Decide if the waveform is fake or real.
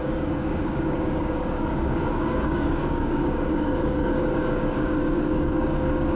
fake